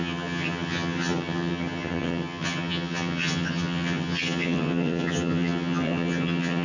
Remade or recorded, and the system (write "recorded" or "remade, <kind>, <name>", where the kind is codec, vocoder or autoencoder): remade, vocoder, HiFi-GAN